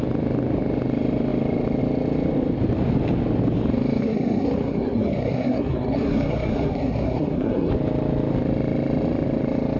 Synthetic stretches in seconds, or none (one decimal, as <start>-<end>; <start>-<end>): 4.0-7.7